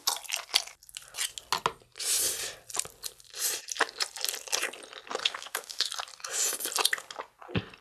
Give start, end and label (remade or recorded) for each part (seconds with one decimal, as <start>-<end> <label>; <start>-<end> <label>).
0.0-5.2 recorded; 5.2-5.9 remade; 5.9-7.8 recorded